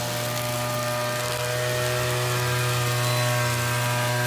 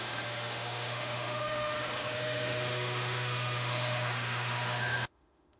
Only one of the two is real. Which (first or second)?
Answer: first